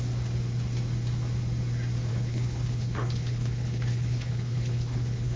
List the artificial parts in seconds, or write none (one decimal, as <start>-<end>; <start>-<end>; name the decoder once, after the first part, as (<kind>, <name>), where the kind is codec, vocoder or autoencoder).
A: 2.1-5.4 (codec, HILCodec)